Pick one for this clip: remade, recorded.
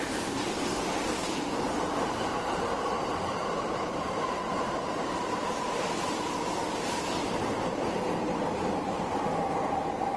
remade